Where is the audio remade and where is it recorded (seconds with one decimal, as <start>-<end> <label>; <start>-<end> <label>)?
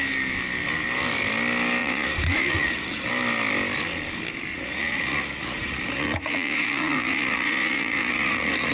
0.0-1.8 recorded; 1.8-3.1 remade; 3.1-4.5 recorded; 4.5-8.7 remade